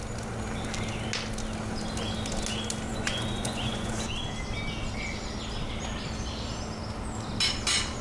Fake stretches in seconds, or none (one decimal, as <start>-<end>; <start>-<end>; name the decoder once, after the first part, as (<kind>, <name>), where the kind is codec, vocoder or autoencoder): 2.9-3.9 (vocoder, Vocos)

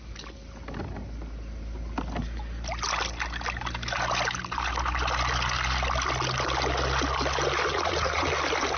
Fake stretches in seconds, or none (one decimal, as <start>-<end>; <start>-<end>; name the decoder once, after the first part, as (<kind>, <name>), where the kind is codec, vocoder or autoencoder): 7.7-8.3 (vocoder, Vocos)